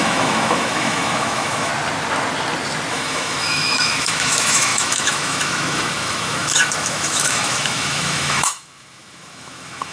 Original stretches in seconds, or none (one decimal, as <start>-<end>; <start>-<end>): 1.7-2.9